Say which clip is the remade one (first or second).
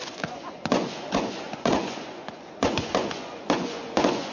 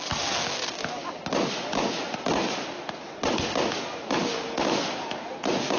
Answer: first